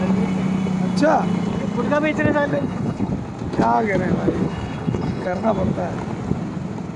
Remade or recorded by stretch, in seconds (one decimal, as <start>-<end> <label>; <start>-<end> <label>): 0.0-2.5 recorded; 2.5-3.1 remade; 3.1-4.4 recorded; 4.4-5.5 remade; 5.5-7.0 recorded